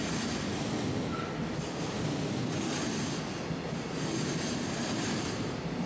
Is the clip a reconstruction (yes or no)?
no